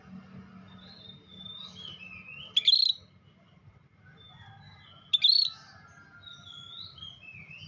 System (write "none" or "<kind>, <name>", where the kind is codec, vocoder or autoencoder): none